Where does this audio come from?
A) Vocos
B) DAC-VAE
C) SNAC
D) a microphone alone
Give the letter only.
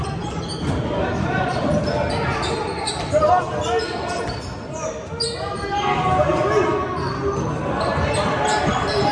D